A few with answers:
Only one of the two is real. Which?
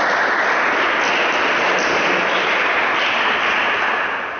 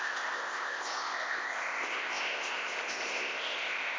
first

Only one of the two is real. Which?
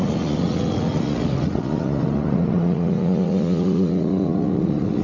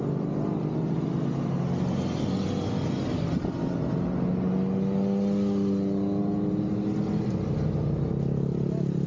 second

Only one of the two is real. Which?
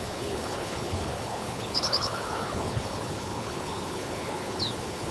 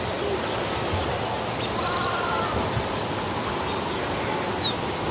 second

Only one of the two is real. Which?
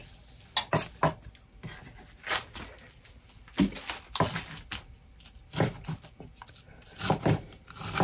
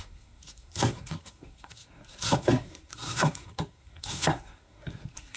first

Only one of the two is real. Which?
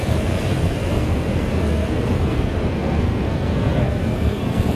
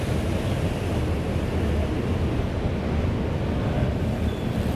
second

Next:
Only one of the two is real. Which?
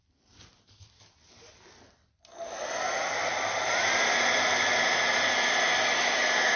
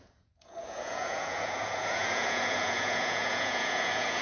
first